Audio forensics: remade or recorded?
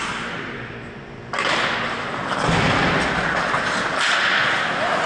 recorded